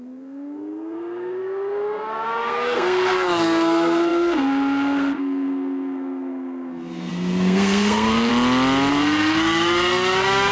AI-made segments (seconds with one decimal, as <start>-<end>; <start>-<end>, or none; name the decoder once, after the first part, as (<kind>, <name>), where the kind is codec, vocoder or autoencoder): 0.0-8.3 (codec, SNAC); 8.9-10.5